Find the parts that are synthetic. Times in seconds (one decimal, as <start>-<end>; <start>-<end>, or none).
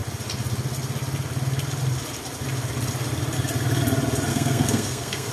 4.3-5.3